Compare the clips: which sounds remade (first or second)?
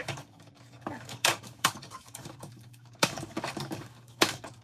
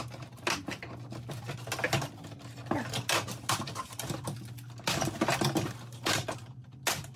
first